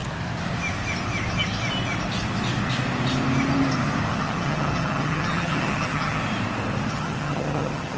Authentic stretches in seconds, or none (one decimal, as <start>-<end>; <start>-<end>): 0.0-4.1; 6.2-6.9